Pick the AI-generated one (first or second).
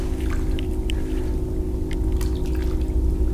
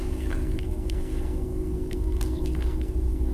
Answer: second